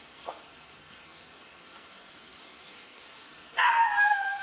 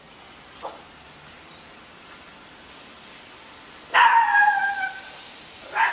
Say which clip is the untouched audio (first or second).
second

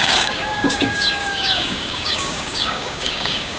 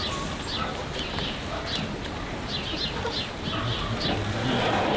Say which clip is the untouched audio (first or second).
second